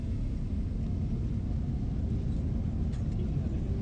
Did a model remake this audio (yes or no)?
no